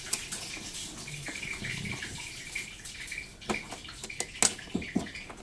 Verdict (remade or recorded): recorded